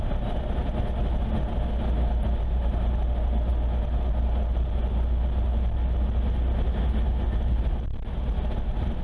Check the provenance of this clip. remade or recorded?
recorded